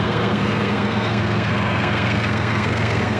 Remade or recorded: remade